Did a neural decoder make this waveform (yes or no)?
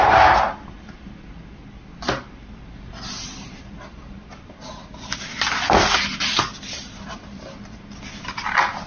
no